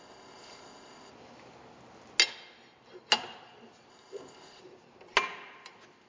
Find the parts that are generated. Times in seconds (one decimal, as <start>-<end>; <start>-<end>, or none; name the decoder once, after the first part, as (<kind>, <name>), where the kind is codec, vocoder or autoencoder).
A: 0.0-1.1 (codec, ZipCodec); 3.9-4.6